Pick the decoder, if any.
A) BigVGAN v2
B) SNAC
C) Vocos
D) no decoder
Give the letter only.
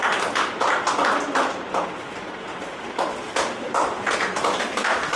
A